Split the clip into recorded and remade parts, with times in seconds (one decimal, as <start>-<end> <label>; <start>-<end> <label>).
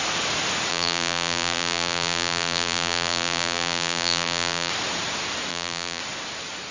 0.0-0.7 recorded; 0.7-4.7 remade; 4.7-5.5 recorded; 5.5-6.0 remade; 6.0-6.7 recorded